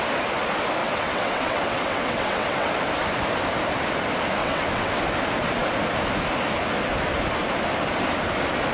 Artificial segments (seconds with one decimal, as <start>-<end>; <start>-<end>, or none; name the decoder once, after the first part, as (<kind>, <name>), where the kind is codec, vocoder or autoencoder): 0.8-2.7 (vocoder, WaveNeXt); 4.4-5.0